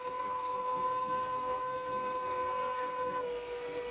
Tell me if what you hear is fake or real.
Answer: fake